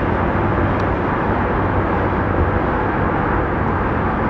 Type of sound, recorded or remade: recorded